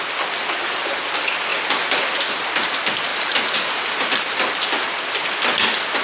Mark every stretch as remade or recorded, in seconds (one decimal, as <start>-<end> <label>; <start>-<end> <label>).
0.0-3.1 recorded; 3.1-4.9 remade; 4.9-6.0 recorded

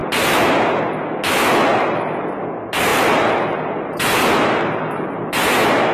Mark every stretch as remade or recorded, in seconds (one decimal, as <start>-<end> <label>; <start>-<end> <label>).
0.0-0.5 remade; 0.5-1.7 recorded; 1.7-2.3 remade; 2.3-2.9 recorded; 2.9-5.9 remade

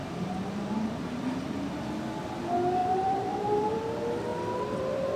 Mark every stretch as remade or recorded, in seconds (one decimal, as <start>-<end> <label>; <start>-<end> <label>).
0.0-1.6 remade; 1.6-2.8 recorded; 2.8-3.8 remade; 3.8-4.3 recorded; 4.3-5.2 remade

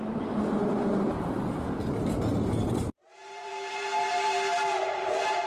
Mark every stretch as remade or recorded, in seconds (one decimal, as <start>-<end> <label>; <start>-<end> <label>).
0.0-5.5 remade

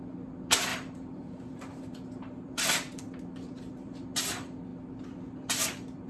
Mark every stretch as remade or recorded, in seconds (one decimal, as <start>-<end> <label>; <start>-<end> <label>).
0.0-0.7 recorded; 0.7-4.0 remade; 4.0-6.1 recorded

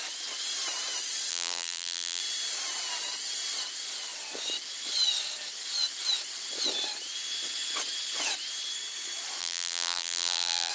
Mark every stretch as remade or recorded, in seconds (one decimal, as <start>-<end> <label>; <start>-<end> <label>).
0.0-1.3 recorded; 1.3-2.2 remade; 2.2-9.4 recorded; 9.4-10.7 remade

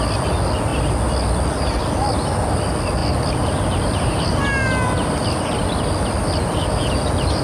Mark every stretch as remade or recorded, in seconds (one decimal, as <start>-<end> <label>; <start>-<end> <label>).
0.0-7.4 recorded